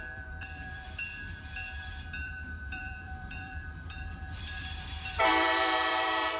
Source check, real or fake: fake